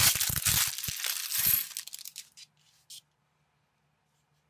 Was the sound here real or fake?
real